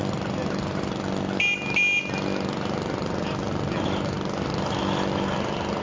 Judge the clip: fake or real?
real